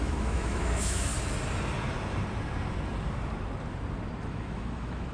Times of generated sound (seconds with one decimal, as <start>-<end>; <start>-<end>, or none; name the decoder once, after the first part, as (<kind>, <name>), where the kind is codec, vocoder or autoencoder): 0.0-1.1 (autoencoder, DAC-VAE); 4.2-5.1

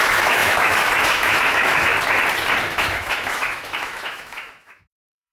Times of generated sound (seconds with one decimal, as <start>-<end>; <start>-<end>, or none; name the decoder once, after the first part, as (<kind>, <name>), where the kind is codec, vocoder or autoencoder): 0.0-1.9 (autoencoder, DAC-VAE); 2.7-5.3